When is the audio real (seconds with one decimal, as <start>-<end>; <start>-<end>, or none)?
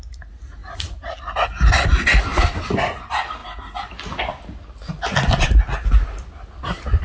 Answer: 0.0-7.0